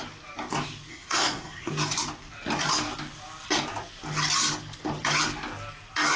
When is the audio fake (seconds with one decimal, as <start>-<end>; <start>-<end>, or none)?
0.9-1.7